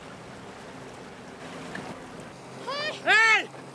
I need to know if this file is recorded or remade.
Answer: recorded